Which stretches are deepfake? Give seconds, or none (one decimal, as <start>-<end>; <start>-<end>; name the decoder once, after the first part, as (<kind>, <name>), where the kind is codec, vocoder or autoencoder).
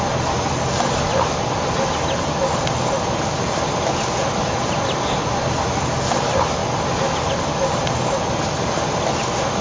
none